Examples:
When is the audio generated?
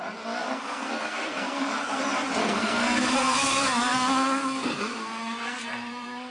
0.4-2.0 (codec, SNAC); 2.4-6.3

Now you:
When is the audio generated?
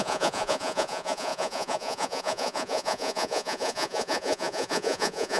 0.0-5.4 (vocoder, Vocos)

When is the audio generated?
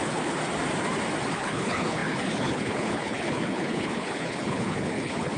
0.0-0.4 (codec, HILCodec); 1.3-5.4